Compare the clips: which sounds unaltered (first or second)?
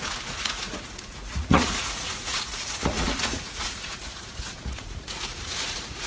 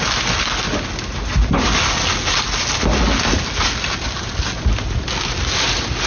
second